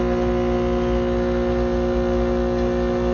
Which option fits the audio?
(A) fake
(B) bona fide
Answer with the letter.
B